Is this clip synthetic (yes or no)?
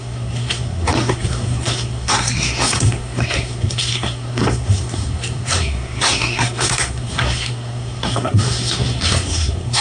yes